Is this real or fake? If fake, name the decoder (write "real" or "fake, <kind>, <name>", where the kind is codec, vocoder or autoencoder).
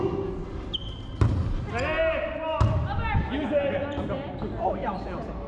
real